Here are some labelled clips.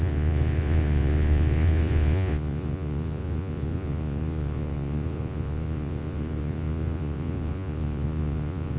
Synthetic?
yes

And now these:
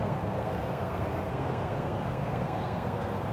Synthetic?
yes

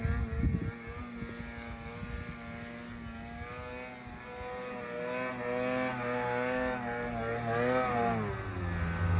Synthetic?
no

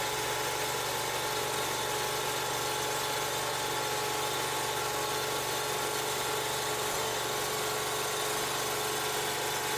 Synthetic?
no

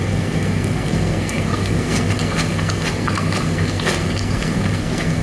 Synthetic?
yes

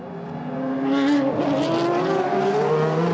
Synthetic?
no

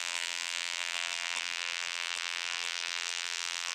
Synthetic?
yes